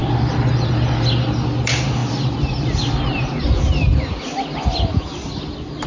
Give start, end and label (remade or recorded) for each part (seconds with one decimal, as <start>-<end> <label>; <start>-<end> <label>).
0.0-5.9 recorded